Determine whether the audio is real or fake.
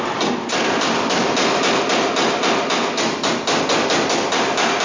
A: real